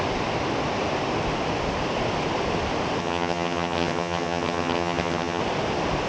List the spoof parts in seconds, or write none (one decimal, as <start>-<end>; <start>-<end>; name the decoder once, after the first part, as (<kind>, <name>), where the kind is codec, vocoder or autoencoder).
3.0-5.4 (vocoder, HiFi-GAN)